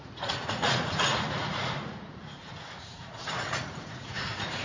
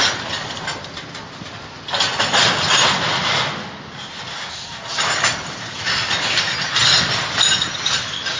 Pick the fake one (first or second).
first